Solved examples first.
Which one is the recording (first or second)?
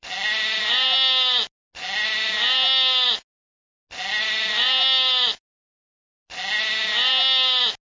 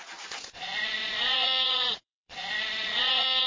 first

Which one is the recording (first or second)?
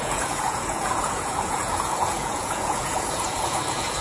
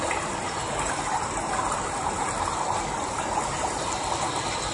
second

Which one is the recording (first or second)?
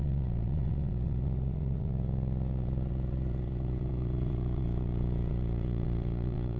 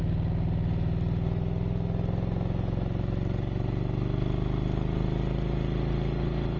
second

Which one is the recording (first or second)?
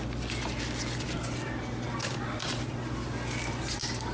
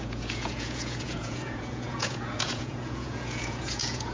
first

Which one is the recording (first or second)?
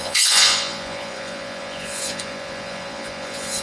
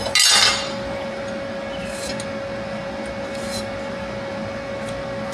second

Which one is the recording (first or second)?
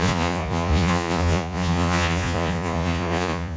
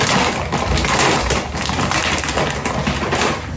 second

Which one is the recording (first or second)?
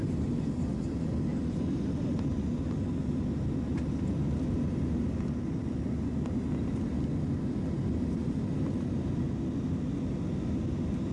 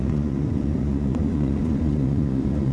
first